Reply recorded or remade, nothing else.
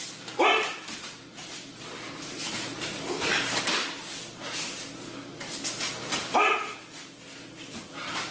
recorded